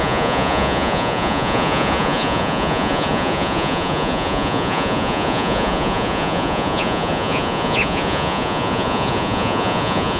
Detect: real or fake fake